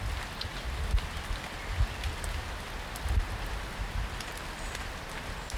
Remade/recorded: recorded